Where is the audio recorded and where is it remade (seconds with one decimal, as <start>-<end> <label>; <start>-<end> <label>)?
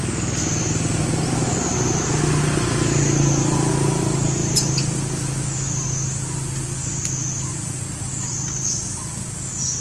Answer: 0.0-9.8 recorded